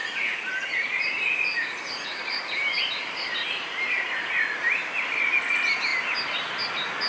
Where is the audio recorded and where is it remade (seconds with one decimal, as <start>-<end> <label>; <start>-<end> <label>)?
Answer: 0.0-4.3 remade; 4.3-7.1 recorded